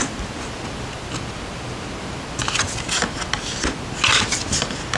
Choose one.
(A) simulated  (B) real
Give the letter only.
B